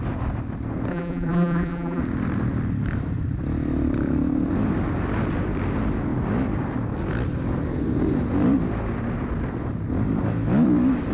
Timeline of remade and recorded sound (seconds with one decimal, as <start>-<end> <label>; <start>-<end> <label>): 0.0-0.9 recorded; 0.9-2.0 remade; 2.0-11.1 recorded